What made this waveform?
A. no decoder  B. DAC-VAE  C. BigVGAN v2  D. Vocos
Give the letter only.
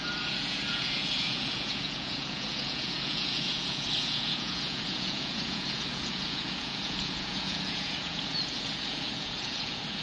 D